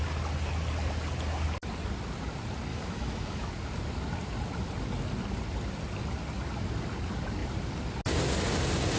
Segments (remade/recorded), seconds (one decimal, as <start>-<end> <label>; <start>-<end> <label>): 0.0-2.7 recorded; 2.7-3.5 remade; 3.5-9.0 recorded